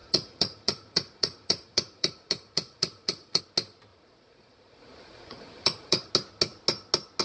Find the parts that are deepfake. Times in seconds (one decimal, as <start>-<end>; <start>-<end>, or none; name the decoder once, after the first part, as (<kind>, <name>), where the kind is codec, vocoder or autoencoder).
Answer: 0.0-3.4 (vocoder, Vocos); 3.9-6.1